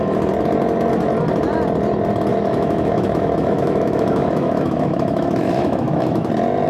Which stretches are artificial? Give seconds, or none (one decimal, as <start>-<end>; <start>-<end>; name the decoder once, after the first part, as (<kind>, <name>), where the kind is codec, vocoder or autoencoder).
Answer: 2.3-6.3 (autoencoder, DAC-VAE)